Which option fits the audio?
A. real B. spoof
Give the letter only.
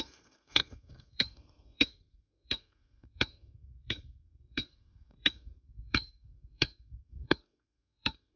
B